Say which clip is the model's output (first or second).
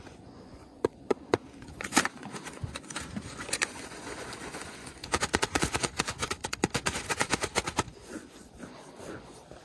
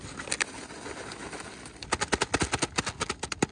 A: first